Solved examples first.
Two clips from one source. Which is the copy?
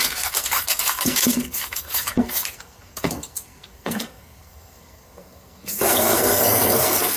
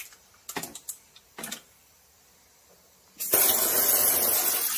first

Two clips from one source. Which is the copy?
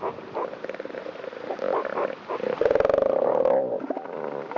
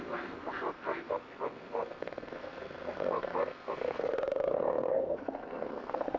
second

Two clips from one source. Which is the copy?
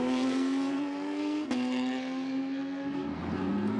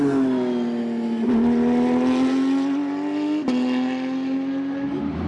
first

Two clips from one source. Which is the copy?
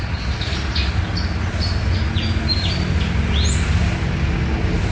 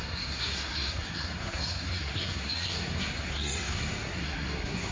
second